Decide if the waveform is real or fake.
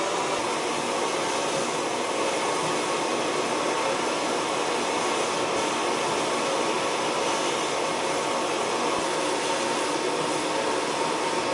real